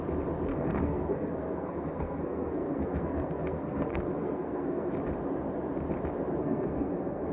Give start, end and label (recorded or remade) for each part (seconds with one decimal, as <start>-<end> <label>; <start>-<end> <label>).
0.0-0.5 recorded; 0.5-4.9 remade; 4.9-6.4 recorded; 6.4-7.3 remade